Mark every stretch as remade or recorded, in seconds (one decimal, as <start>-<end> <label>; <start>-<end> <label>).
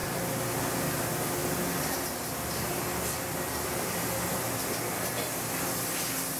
0.0-6.4 recorded